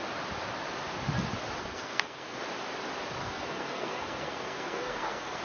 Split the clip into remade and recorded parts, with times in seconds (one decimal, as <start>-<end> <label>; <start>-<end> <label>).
0.0-1.6 recorded; 1.6-2.4 remade; 2.4-3.2 recorded; 3.2-5.4 remade